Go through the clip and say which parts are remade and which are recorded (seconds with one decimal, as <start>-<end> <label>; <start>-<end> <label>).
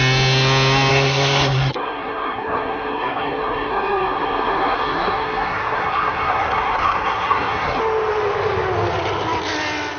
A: 0.0-0.9 recorded; 0.9-7.8 remade; 7.8-10.0 recorded